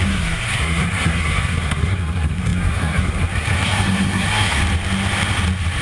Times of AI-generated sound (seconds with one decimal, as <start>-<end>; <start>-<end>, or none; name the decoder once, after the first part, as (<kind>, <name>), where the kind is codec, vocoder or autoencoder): 0.0-4.6 (codec, SNAC)